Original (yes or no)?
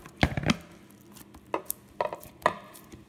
yes